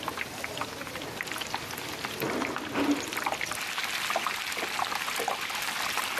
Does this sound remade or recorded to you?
recorded